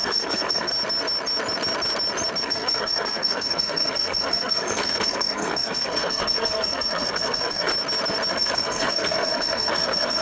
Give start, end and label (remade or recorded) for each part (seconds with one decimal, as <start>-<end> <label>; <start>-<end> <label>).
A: 0.0-0.7 remade; 0.7-2.4 recorded; 2.4-7.7 remade; 7.7-8.3 recorded; 8.3-10.2 remade